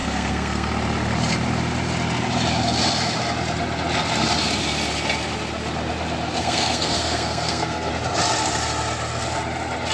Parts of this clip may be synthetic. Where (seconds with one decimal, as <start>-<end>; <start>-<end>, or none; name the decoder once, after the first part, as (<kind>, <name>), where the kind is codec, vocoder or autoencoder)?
0.0-0.7 (codec, SNAC); 6.4-7.9